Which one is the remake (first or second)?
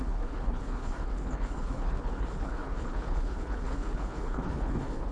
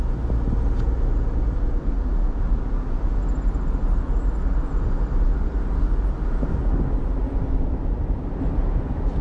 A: first